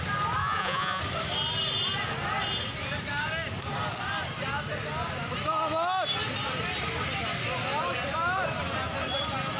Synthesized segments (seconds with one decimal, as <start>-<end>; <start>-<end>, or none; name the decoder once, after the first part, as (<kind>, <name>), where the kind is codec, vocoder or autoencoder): 0.4-1.0 (vocoder, Vocos)